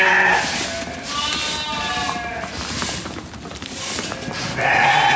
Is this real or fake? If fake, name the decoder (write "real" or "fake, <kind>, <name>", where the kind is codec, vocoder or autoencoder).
real